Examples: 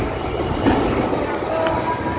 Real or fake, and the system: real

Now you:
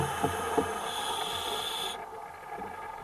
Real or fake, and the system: real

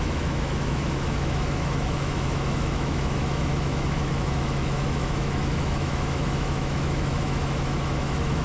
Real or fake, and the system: fake, autoencoder, DAC-VAE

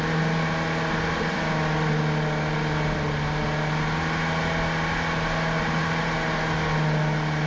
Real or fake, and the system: real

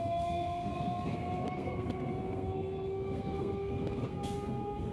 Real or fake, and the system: fake, codec, SNAC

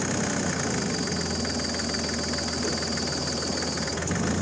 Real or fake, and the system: real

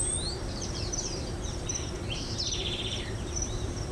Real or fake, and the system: fake, vocoder, BigVGAN v2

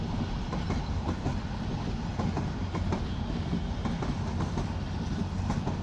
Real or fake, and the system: real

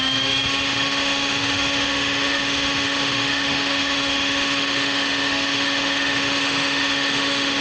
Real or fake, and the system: fake, autoencoder, DAC-VAE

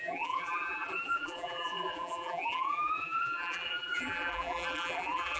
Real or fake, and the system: fake, vocoder, BigVGAN v2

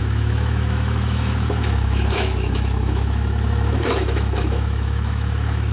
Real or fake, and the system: fake, autoencoder, DAC-VAE